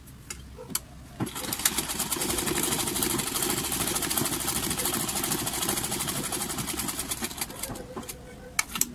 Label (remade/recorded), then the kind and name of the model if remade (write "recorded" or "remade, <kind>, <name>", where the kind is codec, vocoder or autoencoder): recorded